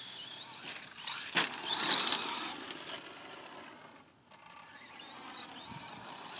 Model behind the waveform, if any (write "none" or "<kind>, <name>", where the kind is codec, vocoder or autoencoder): none